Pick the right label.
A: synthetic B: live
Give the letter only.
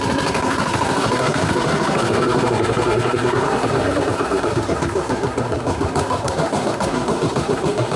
A